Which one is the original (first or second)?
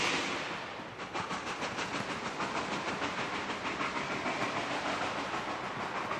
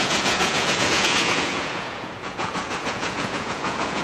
first